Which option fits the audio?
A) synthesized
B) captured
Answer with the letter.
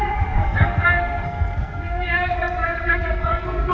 A